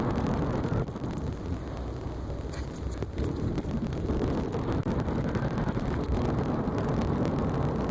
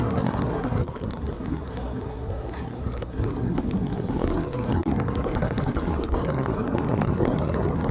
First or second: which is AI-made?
second